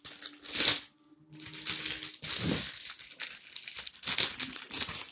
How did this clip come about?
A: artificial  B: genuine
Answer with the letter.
B